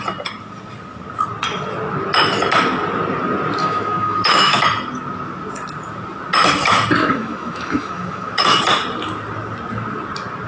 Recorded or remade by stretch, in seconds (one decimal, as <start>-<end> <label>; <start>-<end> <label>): 0.0-3.6 recorded; 3.6-4.6 remade; 4.6-7.0 recorded; 7.0-8.6 remade; 8.6-10.5 recorded